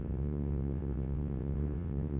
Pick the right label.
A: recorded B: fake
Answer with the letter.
B